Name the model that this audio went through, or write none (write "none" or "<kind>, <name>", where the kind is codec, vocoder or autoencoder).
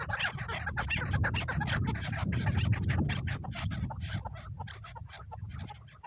vocoder, BigVGAN v2